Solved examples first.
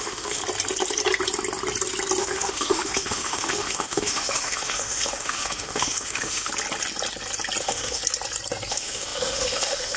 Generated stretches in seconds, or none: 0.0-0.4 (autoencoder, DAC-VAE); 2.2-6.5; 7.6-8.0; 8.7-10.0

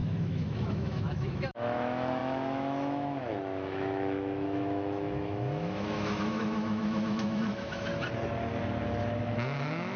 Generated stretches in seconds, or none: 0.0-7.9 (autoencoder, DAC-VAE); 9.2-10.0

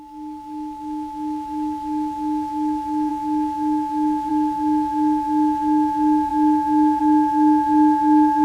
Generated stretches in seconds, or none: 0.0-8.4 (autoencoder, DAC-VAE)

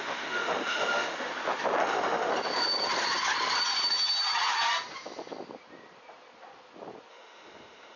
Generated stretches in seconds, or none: 0.0-1.3 (autoencoder, DAC-VAE); 1.8-2.3; 7.1-8.0